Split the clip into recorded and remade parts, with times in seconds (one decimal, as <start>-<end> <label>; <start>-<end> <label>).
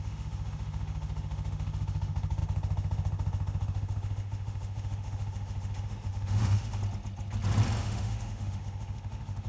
0.0-6.8 remade; 6.8-7.8 recorded; 7.8-9.5 remade